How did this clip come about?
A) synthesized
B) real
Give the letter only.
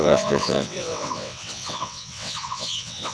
A